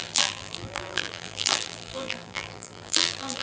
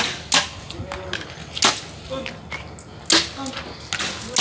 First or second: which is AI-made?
first